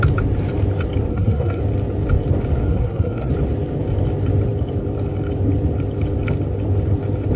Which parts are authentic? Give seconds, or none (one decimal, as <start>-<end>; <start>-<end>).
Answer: 0.0-1.1; 1.6-2.6; 3.3-7.4